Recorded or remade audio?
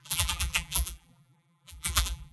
remade